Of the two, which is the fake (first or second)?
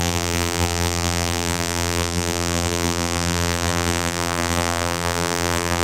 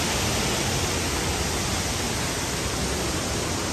first